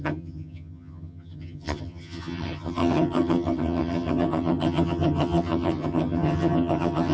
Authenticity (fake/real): fake